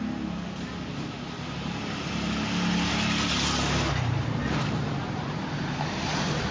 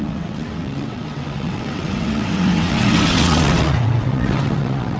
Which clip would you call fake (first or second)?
second